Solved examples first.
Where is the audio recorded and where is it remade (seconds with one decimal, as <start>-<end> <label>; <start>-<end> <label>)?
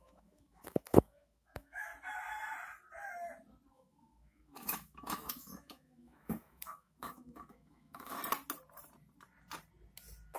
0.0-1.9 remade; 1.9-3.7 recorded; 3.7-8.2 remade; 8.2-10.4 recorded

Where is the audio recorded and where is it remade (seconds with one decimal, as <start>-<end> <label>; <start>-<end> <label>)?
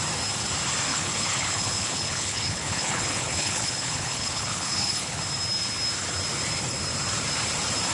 0.0-0.9 recorded; 0.9-5.2 remade; 5.2-7.9 recorded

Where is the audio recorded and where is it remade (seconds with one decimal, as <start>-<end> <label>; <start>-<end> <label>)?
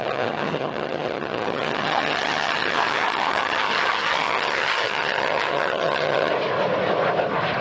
0.0-6.3 remade; 6.3-7.6 recorded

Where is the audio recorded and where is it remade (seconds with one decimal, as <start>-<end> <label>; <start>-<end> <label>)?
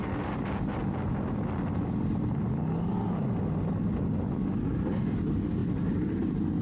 0.0-5.6 recorded; 5.6-6.6 remade